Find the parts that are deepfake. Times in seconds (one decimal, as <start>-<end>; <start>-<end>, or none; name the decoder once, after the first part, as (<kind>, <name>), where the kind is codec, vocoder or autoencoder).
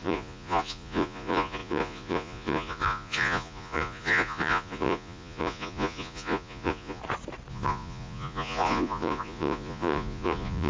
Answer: 0.0-7.0 (vocoder, Vocos); 7.5-10.7